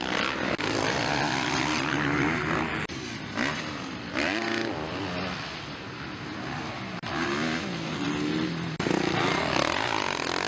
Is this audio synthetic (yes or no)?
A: no